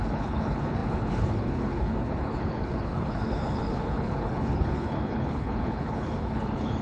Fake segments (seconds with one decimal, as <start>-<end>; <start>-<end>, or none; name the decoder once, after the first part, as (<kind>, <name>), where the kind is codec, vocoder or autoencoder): 0.0-6.8 (codec, HILCodec)